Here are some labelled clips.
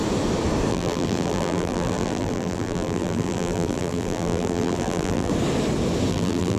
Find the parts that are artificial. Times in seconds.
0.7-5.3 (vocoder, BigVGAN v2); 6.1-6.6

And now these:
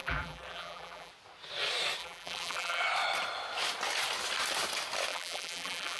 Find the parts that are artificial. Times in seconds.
0.0-1.1 (vocoder, BigVGAN v2); 2.0-2.8; 5.1-6.0

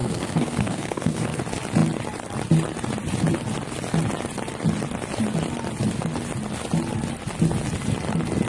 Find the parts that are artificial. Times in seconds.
0.0-1.4 (codec, SNAC)